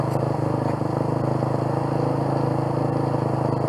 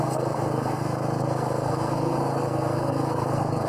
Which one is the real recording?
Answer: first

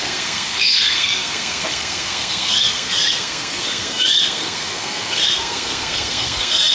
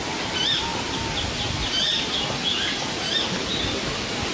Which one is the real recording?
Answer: second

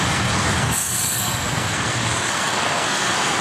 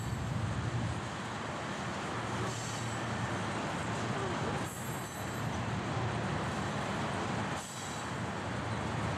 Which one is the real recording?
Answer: second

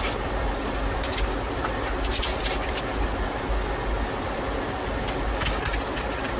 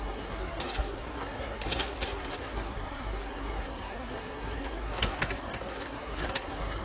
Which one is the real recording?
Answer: first